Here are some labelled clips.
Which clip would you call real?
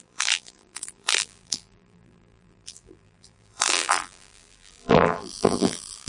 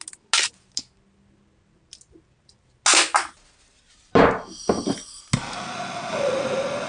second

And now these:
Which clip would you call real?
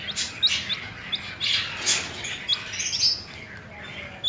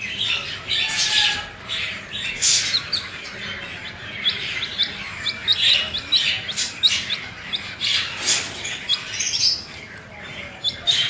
first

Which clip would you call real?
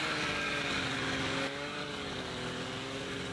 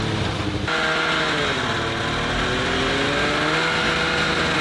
second